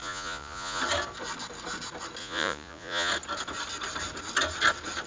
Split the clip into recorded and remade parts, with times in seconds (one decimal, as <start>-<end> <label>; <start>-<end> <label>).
0.0-0.8 remade; 0.8-2.2 recorded; 2.2-3.1 remade; 3.1-5.1 recorded